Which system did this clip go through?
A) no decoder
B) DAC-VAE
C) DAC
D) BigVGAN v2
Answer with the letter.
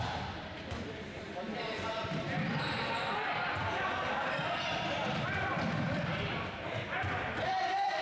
D